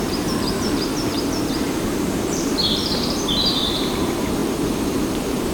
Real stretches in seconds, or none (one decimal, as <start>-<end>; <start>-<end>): 1.1-1.6; 2.6-3.6